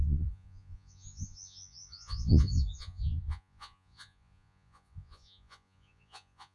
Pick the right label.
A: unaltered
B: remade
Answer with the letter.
B